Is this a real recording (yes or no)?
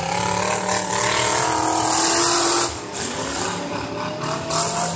yes